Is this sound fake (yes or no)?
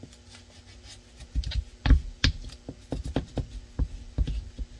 no